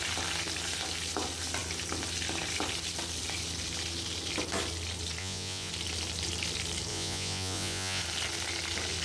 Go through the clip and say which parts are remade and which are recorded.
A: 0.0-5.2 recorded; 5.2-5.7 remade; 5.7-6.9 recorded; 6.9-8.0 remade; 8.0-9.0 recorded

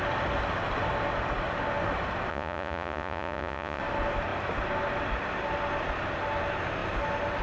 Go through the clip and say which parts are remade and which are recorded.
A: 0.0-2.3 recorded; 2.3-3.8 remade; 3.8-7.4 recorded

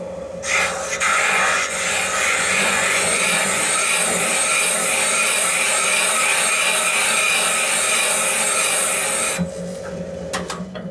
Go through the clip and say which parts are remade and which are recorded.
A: 0.0-1.1 recorded; 1.1-3.6 remade; 3.6-10.9 recorded

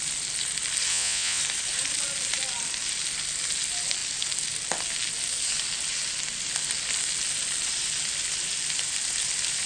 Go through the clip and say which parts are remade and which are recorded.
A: 0.0-0.9 recorded; 0.9-1.4 remade; 1.4-9.7 recorded

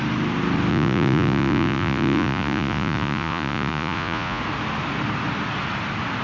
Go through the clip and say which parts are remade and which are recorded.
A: 0.0-0.7 recorded; 0.7-4.4 remade; 4.4-6.2 recorded